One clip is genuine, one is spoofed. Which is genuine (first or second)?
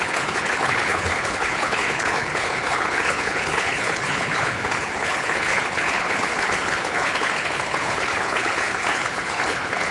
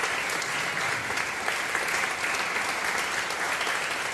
second